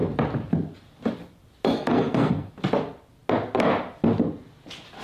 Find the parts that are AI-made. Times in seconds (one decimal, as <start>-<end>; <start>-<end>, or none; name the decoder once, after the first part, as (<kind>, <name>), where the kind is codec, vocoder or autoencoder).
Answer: 1.7-2.5 (codec, SNAC)